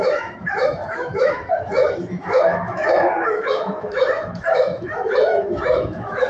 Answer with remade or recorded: remade